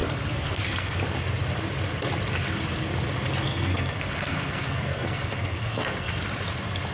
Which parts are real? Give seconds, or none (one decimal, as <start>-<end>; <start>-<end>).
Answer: 1.0-3.4; 6.1-6.9

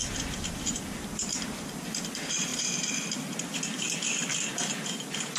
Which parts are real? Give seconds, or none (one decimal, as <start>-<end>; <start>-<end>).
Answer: 2.5-3.4

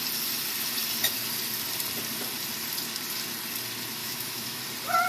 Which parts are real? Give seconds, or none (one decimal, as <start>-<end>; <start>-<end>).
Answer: 0.0-4.0; 4.6-5.1

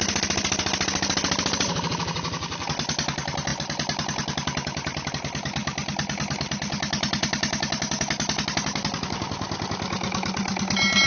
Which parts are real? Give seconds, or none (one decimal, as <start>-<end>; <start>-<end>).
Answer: 0.0-11.1

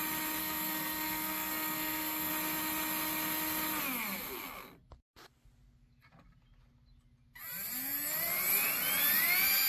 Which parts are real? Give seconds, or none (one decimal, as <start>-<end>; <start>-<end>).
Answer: 0.0-0.4; 2.3-9.7

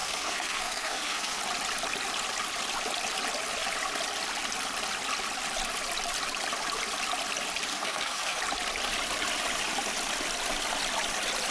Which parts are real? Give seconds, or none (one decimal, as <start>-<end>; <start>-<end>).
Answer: 1.4-7.7; 8.4-11.5

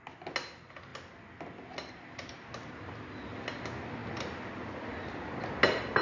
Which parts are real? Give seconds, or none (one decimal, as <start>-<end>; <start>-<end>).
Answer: 0.0-6.0

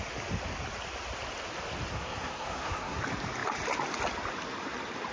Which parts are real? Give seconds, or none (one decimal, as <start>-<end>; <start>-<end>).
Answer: 0.0-1.9; 3.0-5.1